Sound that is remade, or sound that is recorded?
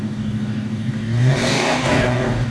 remade